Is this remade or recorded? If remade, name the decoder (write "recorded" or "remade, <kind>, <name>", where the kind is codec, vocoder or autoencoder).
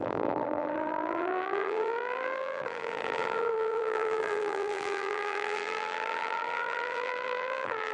remade, vocoder, BigVGAN v2